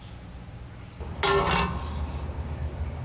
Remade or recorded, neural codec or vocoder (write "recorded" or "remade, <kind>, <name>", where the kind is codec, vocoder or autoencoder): recorded